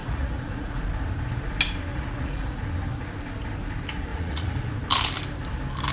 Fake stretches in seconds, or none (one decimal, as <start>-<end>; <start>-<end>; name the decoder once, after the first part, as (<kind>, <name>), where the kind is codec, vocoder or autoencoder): 0.0-0.8 (vocoder, Vocos); 1.9-2.6; 4.1-4.7